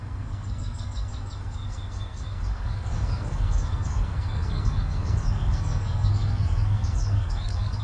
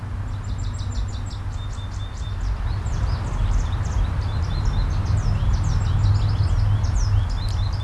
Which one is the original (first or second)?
second